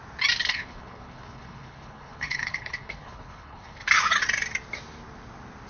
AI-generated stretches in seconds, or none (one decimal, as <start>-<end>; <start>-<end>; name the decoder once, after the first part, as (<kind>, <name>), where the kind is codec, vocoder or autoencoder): 0.4-3.8 (codec, HILCodec)